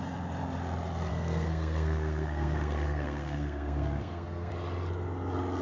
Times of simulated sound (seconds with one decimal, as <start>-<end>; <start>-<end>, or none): 1.1-4.5